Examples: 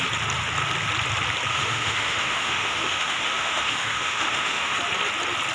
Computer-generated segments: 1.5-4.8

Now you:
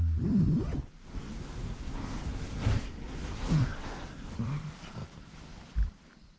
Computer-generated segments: 1.2-4.3

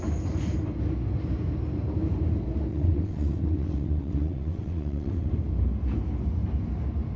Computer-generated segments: 2.7-5.3

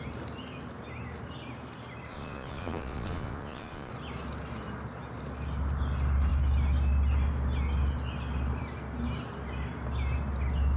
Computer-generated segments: 2.1-3.9